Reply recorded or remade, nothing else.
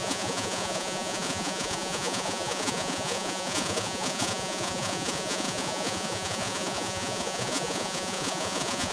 remade